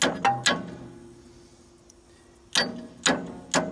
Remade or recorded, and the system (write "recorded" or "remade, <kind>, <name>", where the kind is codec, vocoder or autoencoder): recorded